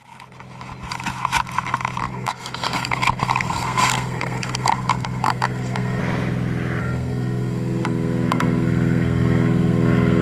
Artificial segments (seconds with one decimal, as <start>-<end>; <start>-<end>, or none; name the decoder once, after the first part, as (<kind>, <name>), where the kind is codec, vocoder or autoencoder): 2.0-6.0 (codec, SNAC); 6.8-10.2